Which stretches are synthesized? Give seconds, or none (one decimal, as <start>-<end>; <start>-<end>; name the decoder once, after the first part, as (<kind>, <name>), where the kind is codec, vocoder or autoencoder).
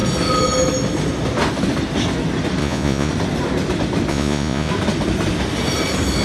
2.6-3.1 (vocoder, Vocos); 4.1-4.7